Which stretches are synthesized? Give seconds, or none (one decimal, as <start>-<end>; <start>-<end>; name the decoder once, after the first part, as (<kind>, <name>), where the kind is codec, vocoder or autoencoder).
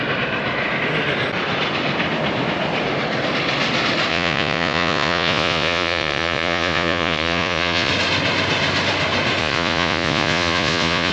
4.1-7.9 (vocoder, Vocos); 9.4-11.1